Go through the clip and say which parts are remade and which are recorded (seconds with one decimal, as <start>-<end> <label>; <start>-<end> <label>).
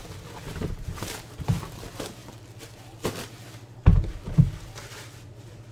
0.0-0.4 recorded; 0.4-1.5 remade; 1.5-5.7 recorded